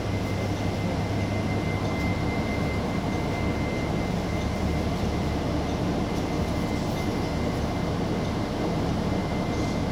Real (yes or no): yes